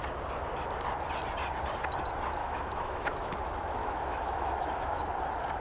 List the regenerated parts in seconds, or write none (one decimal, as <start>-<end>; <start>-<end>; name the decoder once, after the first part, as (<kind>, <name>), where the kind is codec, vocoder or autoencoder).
2.4-3.3 (autoencoder, DAC-VAE); 3.8-5.0

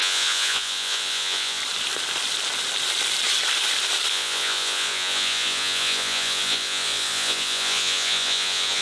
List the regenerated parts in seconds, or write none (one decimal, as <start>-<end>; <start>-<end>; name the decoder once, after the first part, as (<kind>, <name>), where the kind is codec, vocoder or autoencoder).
0.0-1.6 (vocoder, Vocos); 4.1-8.8

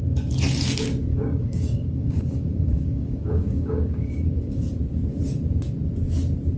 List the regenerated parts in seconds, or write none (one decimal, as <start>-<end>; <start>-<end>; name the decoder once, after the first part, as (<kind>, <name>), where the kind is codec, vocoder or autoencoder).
1.1-4.6 (codec, DAC)

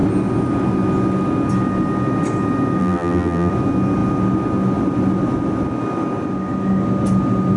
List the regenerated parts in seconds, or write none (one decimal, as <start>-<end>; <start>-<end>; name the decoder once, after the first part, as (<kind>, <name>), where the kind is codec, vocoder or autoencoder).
2.8-3.5 (vocoder, BigVGAN v2)

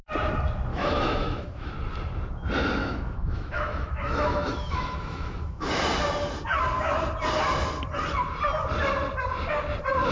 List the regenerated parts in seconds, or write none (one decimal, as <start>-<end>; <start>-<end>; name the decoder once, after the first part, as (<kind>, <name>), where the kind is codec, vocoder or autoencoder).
0.7-1.7 (autoencoder, DAC-VAE); 2.8-5.7

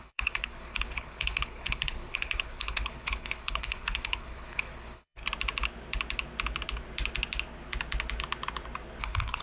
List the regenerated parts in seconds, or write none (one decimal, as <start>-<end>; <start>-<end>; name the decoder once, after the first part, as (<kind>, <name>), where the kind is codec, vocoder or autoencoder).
0.0-5.2 (codec, HILCodec); 9.0-9.4

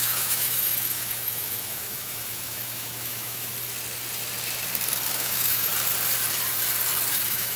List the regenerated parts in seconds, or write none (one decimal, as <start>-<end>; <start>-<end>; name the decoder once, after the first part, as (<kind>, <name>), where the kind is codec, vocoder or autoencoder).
0.0-3.5 (autoencoder, DAC-VAE); 5.1-5.7; 7.1-7.6

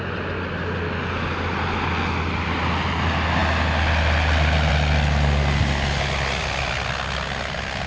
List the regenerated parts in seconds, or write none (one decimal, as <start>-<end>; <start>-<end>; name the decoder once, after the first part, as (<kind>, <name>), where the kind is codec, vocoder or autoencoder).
none